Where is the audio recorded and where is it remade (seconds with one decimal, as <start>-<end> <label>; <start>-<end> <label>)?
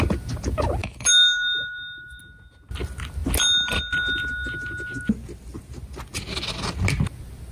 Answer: 0.0-0.8 recorded; 0.8-2.2 remade; 2.2-7.5 recorded